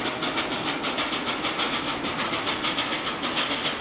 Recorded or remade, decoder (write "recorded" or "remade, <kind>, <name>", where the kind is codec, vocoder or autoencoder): recorded